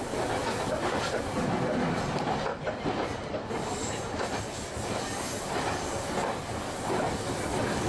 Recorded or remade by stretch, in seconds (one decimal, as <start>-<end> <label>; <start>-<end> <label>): 0.0-7.9 recorded